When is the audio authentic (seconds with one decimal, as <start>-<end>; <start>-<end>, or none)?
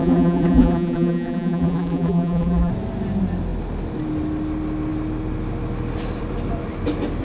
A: 2.7-7.2